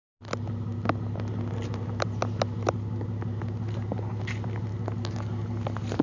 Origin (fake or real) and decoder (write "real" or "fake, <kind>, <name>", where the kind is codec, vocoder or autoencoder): real